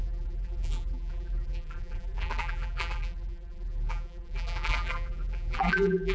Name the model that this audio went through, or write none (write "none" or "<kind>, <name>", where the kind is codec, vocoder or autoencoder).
vocoder, BigVGAN v2